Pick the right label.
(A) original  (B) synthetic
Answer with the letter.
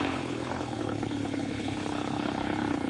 B